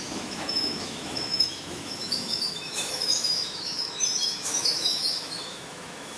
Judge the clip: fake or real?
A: fake